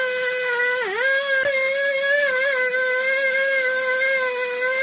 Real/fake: real